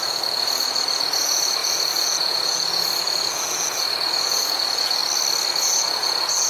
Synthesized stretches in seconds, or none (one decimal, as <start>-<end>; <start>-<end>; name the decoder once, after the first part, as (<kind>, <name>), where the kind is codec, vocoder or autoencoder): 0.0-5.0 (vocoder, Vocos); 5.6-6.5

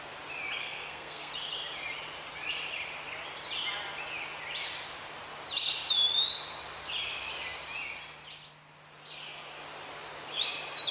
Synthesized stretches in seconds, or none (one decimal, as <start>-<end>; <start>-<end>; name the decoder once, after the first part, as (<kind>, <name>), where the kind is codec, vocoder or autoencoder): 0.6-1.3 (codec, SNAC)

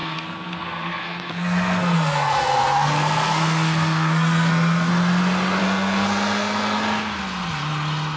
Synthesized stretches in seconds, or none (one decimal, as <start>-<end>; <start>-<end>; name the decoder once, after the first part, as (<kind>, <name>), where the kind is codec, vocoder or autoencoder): 0.0-4.9 (codec, SNAC); 5.6-7.2

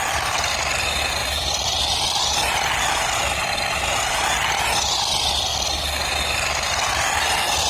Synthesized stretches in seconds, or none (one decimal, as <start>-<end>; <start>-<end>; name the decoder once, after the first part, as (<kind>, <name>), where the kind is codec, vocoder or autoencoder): 1.2-2.2 (vocoder, BigVGAN v2)

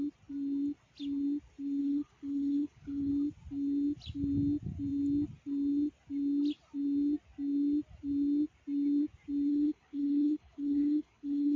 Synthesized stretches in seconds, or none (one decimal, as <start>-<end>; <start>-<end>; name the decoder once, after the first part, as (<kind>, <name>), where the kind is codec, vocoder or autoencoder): 1.8-3.1 (codec, HILCodec); 9.5-11.6